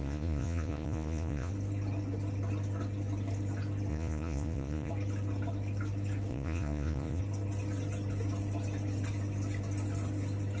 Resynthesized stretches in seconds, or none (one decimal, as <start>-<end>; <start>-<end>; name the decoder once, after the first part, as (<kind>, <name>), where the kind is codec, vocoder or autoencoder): 0.0-1.5 (vocoder, Vocos); 3.9-4.9; 6.3-7.2